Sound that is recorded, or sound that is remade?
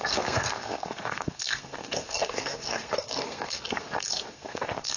remade